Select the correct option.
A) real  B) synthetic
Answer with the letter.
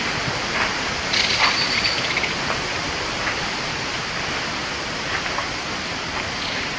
A